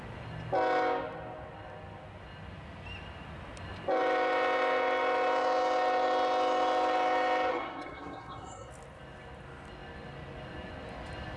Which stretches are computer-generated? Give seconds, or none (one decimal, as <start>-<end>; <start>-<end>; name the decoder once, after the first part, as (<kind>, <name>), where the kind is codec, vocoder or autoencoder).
7.5-8.7 (codec, SNAC)